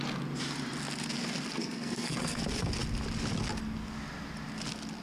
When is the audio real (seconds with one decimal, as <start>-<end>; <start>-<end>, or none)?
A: 0.0-1.6; 2.4-5.0